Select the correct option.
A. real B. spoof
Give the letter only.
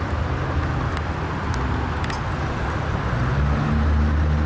A